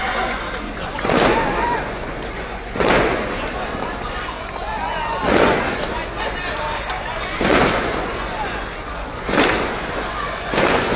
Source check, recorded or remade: remade